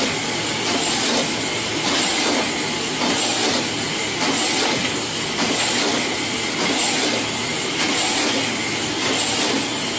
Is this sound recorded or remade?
recorded